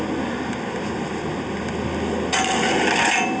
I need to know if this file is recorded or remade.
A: recorded